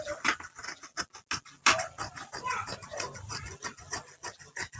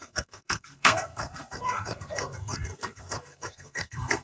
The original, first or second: first